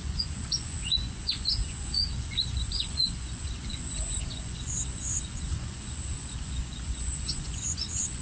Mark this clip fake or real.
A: fake